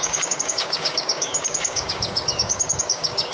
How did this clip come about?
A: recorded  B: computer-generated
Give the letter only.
B